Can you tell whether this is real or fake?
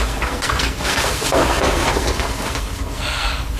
fake